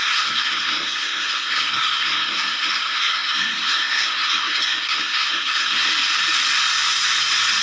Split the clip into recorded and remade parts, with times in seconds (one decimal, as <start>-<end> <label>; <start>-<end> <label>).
0.0-5.9 remade; 5.9-7.6 recorded